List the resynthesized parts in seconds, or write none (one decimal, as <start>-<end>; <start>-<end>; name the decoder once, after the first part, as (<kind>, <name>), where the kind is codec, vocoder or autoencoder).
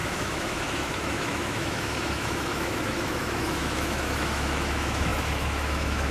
0.0-6.1 (autoencoder, DAC-VAE)